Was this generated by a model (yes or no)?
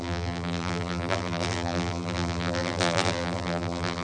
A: yes